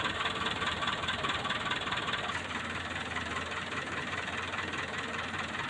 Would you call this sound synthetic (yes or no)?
yes